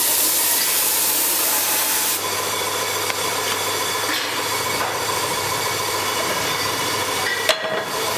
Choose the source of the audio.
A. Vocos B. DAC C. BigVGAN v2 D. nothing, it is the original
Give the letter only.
D